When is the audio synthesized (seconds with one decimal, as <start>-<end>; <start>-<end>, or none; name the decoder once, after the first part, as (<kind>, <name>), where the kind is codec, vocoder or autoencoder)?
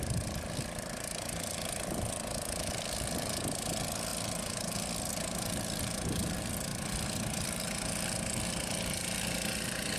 none